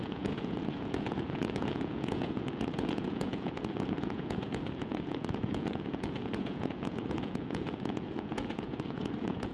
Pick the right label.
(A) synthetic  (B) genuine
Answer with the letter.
A